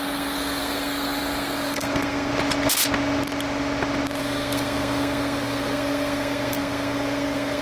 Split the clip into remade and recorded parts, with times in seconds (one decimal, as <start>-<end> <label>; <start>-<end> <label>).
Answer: 0.0-2.3 remade; 2.3-4.2 recorded; 4.2-7.6 remade